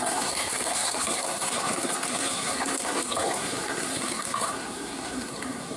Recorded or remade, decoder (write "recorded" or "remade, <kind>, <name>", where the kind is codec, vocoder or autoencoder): remade, codec, SNAC